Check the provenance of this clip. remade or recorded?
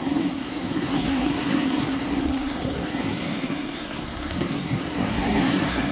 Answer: remade